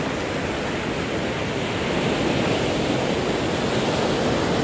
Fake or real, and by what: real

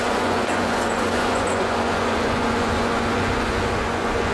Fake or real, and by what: fake, vocoder, Vocos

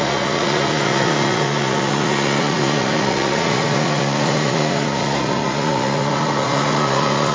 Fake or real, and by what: fake, vocoder, Vocos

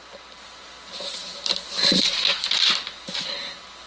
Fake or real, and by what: real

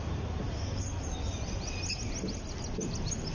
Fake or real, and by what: real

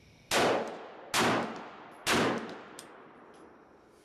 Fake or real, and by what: real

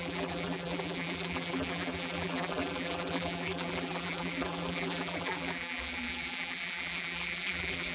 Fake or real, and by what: fake, vocoder, BigVGAN v2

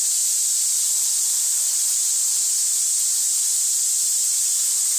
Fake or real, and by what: real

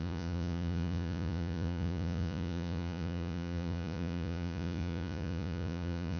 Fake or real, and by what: fake, vocoder, Vocos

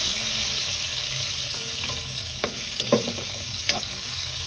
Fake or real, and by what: fake, codec, DAC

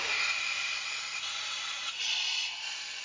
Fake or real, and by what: real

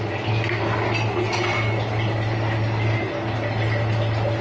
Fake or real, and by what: real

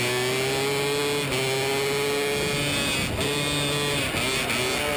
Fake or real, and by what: real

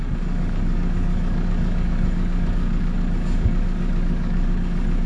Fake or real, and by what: fake, codec, DAC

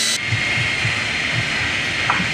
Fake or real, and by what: real